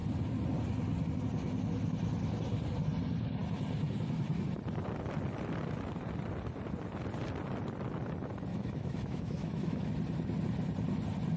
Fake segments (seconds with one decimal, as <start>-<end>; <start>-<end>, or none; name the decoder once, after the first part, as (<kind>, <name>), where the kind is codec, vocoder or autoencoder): 8.5-9.9 (autoencoder, DAC-VAE)